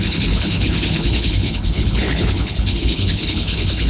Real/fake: fake